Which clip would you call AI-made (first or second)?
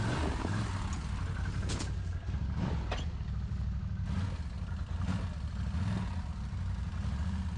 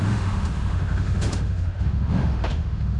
second